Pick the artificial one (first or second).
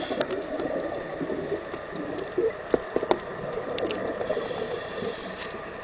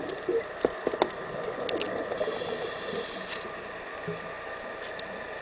first